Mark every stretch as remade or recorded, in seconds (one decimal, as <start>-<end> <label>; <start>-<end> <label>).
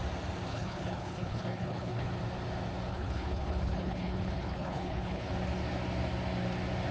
0.0-0.5 recorded; 0.5-2.1 remade; 2.1-2.9 recorded; 2.9-5.3 remade; 5.3-6.9 recorded